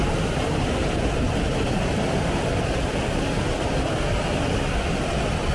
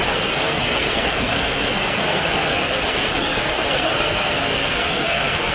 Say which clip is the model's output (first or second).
second